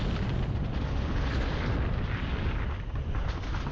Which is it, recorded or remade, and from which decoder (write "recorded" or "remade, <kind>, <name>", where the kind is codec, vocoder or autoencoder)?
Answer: recorded